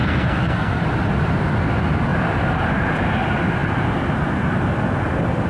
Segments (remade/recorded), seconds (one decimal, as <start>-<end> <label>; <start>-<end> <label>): 0.0-0.8 remade; 0.8-5.5 recorded